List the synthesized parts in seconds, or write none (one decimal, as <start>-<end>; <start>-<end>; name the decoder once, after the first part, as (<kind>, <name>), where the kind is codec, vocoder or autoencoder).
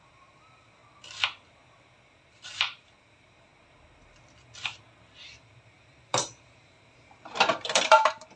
0.0-0.8 (vocoder, BigVGAN v2); 2.3-3.5; 5.2-8.4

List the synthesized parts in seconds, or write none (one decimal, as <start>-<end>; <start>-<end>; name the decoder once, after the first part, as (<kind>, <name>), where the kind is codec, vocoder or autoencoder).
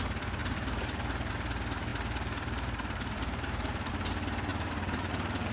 0.4-1.3 (vocoder, BigVGAN v2); 1.9-3.9; 4.5-5.1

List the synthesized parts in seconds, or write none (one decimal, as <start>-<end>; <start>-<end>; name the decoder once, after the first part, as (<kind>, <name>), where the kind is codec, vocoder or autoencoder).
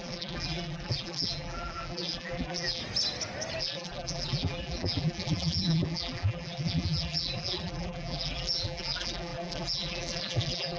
0.0-2.8 (vocoder, BigVGAN v2); 3.6-10.8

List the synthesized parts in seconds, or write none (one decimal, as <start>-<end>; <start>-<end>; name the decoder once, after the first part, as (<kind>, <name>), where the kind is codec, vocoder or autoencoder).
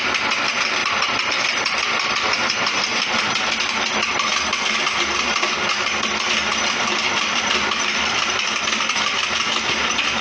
6.5-10.2 (vocoder, BigVGAN v2)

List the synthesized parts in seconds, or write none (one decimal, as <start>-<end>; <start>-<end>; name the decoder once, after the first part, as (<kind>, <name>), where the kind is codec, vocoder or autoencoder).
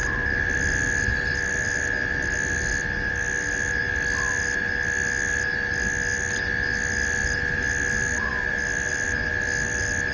none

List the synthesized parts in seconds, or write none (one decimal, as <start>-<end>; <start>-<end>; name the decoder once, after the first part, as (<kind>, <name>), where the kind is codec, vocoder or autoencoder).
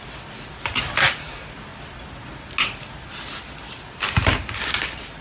none